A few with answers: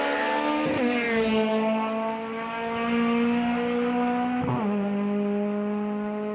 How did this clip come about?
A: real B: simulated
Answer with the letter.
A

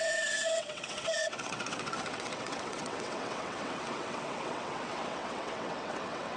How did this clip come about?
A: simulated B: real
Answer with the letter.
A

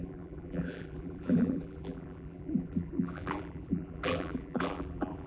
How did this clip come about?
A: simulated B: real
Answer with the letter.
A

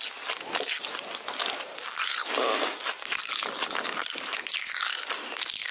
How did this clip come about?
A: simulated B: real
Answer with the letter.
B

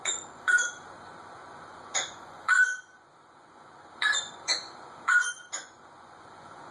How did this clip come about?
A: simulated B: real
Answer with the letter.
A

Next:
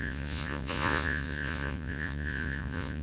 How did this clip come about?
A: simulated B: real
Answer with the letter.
A